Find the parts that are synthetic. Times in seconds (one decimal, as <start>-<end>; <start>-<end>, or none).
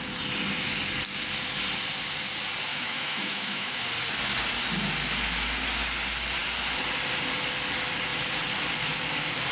2.7-3.8